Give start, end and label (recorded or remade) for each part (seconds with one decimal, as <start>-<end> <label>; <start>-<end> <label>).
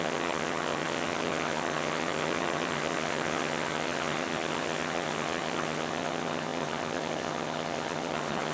0.0-8.5 remade